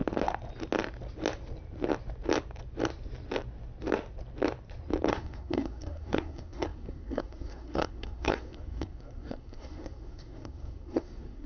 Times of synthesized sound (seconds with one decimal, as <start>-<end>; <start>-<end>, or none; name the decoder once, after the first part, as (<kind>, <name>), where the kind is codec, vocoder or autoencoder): 5.1-11.5 (codec, SNAC)